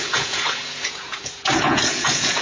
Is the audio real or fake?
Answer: fake